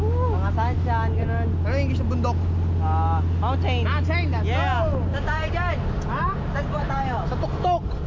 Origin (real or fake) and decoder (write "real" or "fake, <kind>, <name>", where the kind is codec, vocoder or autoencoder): real